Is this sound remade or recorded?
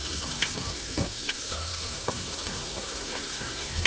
remade